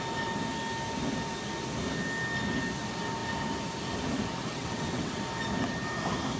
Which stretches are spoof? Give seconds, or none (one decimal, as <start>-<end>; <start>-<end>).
4.5-5.2